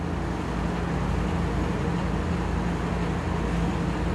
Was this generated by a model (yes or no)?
no